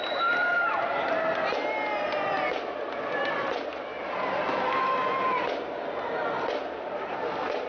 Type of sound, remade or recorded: recorded